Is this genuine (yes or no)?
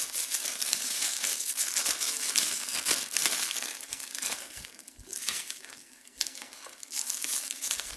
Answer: no